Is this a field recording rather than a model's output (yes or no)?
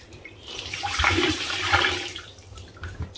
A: no